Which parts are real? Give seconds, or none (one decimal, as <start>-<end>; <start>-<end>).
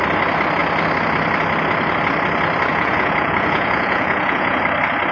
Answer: 0.0-2.7; 4.6-5.1